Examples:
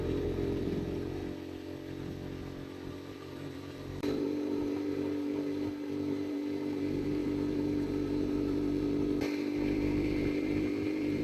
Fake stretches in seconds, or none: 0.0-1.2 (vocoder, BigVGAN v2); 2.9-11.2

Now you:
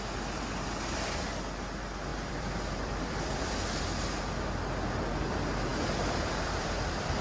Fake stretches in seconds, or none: 2.1-3.5 (vocoder, BigVGAN v2); 5.7-7.2

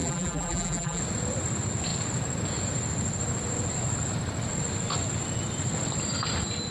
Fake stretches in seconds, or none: 0.0-1.0 (vocoder, BigVGAN v2)

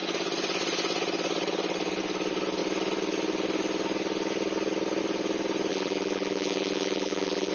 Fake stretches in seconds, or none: 5.7-7.5 (vocoder, BigVGAN v2)

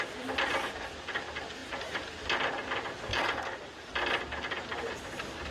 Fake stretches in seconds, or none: 1.6-2.1 (vocoder, BigVGAN v2); 3.1-3.6

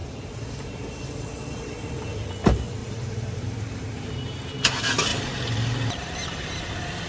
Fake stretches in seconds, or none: 0.0-1.9 (vocoder, BigVGAN v2); 2.8-4.1; 5.1-6.6

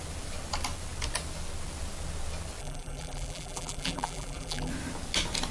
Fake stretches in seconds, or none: 2.6-4.7 (vocoder, BigVGAN v2)

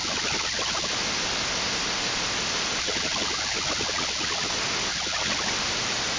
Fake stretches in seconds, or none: 0.0-0.9 (vocoder, BigVGAN v2); 2.8-4.5; 4.9-5.5